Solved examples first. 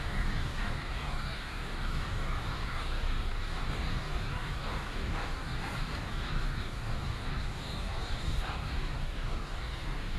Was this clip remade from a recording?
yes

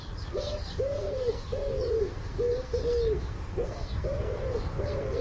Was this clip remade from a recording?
yes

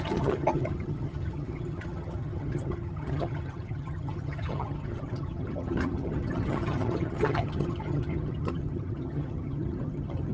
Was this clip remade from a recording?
yes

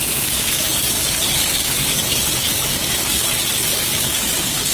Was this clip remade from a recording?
yes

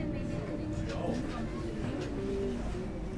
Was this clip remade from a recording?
no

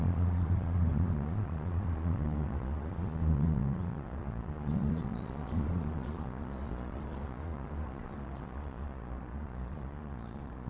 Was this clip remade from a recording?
yes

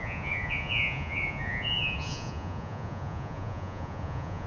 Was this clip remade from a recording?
yes